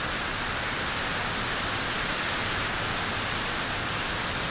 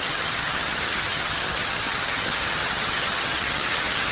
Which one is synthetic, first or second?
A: second